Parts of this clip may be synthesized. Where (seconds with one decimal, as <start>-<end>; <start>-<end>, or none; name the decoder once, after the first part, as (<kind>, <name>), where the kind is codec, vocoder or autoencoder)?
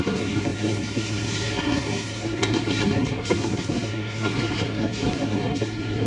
0.0-6.1 (codec, SNAC)